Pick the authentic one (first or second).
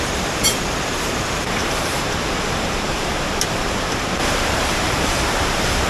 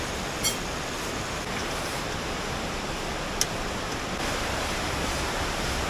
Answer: second